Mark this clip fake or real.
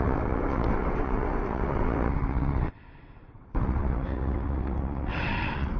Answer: fake